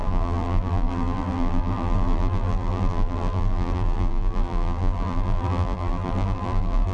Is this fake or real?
fake